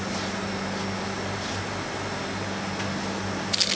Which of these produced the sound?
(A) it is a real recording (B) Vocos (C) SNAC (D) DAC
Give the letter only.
A